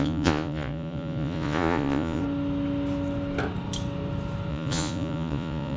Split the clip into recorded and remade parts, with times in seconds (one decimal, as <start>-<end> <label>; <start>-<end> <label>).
0.0-2.2 remade; 2.2-4.5 recorded; 4.5-5.8 remade